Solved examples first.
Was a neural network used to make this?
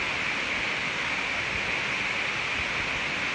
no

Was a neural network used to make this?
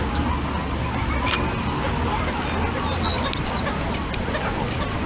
no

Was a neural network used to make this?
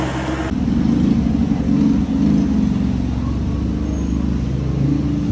no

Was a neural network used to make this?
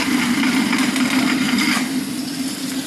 yes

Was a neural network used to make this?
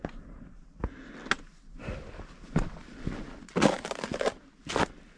no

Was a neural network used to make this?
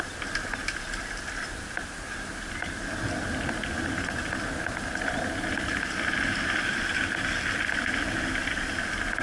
no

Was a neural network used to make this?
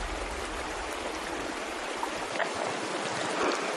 no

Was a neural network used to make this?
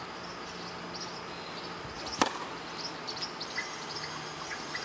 no